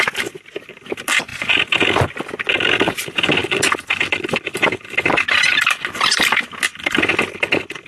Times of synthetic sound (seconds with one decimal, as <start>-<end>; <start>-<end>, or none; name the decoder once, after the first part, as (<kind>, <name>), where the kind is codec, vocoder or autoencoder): none